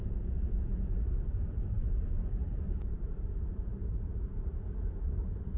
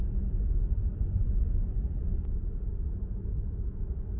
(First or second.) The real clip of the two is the second